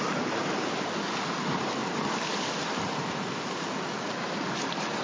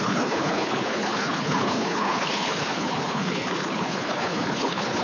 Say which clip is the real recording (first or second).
first